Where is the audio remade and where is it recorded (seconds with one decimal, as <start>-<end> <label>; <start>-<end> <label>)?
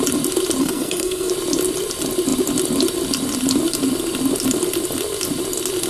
0.0-0.6 recorded; 0.6-1.3 remade; 1.3-5.9 recorded